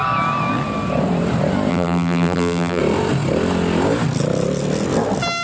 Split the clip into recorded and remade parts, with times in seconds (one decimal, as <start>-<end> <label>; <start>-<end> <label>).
0.0-1.7 recorded; 1.7-2.8 remade; 2.8-5.4 recorded